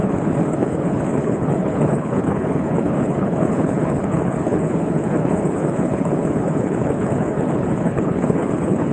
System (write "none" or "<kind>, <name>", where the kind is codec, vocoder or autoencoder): codec, HILCodec